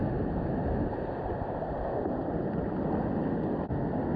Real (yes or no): yes